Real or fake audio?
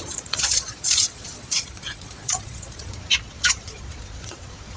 fake